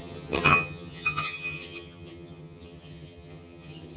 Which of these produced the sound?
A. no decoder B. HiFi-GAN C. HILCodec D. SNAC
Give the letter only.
B